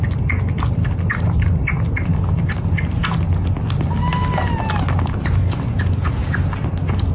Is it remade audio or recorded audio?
recorded